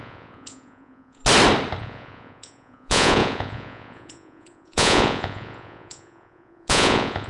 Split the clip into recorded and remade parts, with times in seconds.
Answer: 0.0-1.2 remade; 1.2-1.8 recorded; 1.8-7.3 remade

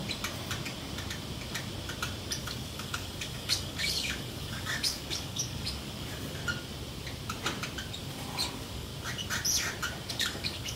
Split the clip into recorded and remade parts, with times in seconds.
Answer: 0.0-2.4 recorded; 2.4-6.4 remade; 6.4-8.5 recorded; 8.5-8.9 remade; 8.9-10.1 recorded; 10.1-10.8 remade

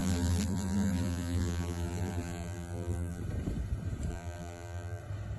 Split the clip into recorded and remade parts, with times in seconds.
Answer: 0.0-3.2 remade; 3.2-4.1 recorded; 4.1-5.0 remade; 5.0-5.4 recorded

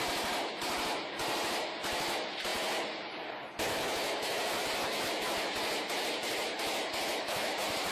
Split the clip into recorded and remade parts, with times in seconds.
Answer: 0.0-7.1 recorded; 7.1-7.9 remade

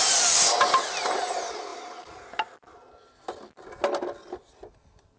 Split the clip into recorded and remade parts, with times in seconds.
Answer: 0.0-5.2 recorded

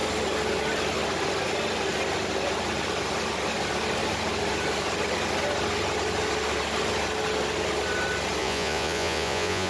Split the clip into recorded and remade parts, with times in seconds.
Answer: 0.0-8.4 recorded; 8.4-9.7 remade

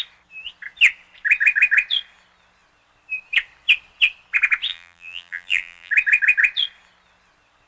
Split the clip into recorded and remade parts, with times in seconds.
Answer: 0.0-4.7 recorded; 4.7-5.9 remade; 5.9-7.7 recorded